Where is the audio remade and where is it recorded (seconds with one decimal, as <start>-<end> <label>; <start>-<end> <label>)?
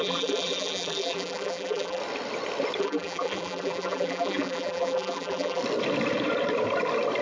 0.0-2.0 remade; 2.0-2.8 recorded; 2.8-5.6 remade; 5.6-7.2 recorded